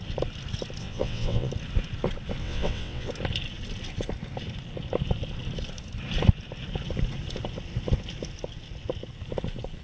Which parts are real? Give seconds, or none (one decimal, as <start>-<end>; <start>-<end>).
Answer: 0.0-0.8; 1.5-2.4; 3.1-9.8